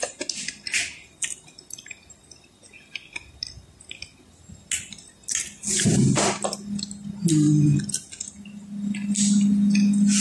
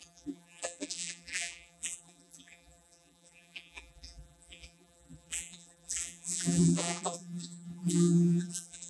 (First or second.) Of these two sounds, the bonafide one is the first